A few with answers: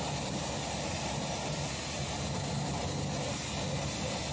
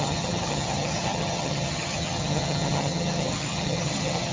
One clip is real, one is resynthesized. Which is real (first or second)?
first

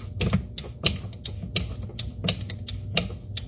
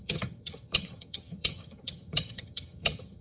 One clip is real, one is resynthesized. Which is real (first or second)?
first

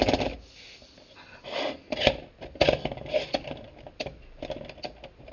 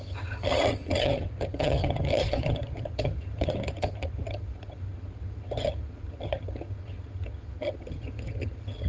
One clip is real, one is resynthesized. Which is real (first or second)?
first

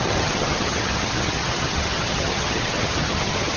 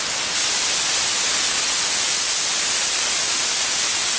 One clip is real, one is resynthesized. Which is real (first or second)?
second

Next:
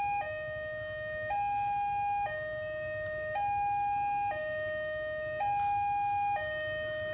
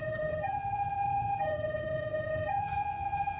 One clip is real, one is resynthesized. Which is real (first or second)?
first